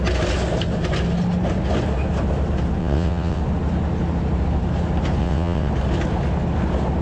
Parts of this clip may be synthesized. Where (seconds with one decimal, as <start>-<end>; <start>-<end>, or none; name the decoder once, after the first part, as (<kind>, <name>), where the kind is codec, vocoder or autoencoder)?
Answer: 2.8-3.4 (vocoder, WaveNeXt); 5.2-5.7